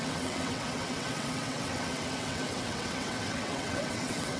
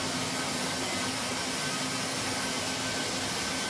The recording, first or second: second